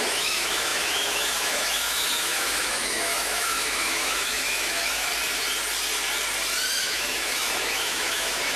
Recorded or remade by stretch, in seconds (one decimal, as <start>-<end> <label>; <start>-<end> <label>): 0.0-5.1 remade; 5.1-6.8 recorded; 6.8-8.6 remade